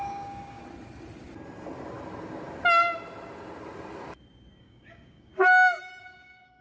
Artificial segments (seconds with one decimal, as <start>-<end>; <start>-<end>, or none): 0.0-0.6; 4.6-5.3; 6.0-6.6